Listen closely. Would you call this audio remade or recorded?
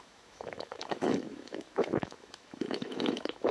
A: remade